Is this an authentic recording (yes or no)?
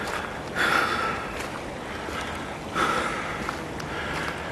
yes